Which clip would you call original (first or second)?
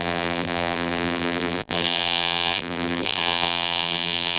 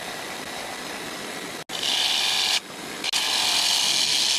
second